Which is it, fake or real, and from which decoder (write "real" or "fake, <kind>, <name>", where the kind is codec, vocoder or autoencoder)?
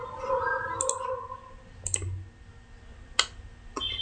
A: real